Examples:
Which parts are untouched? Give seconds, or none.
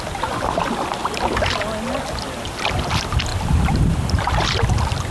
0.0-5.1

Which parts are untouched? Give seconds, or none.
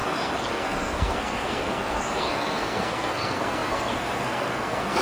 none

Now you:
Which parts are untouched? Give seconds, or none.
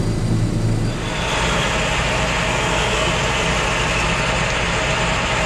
0.0-2.5; 3.1-5.5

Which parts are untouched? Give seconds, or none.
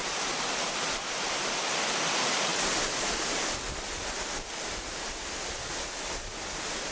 0.0-6.9